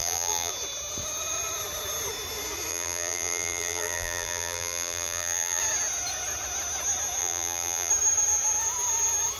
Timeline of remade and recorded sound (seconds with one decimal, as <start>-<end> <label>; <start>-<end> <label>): 0.0-0.5 remade; 0.5-2.7 recorded; 2.7-5.6 remade; 5.6-7.2 recorded; 7.2-7.9 remade; 7.9-9.4 recorded